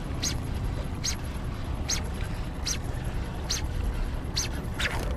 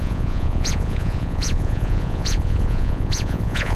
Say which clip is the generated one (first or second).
second